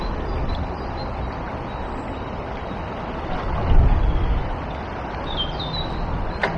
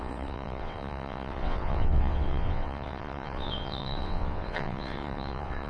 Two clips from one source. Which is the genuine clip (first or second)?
first